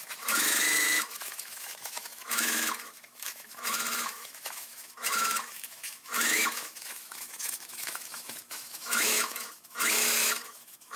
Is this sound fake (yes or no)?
yes